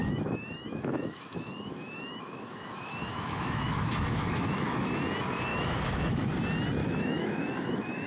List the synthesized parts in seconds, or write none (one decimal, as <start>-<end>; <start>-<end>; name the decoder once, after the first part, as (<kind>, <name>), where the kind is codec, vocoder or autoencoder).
0.0-4.9 (autoencoder, DAC-VAE); 5.5-6.3; 6.8-8.1